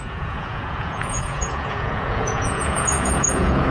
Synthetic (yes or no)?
yes